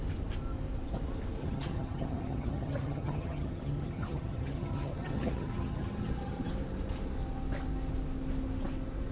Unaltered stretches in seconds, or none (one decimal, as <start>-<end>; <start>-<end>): 0.0-1.4; 6.5-9.1